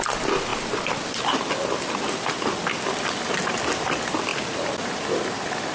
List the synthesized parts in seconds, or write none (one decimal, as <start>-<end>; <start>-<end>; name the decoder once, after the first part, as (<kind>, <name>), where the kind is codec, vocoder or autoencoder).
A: none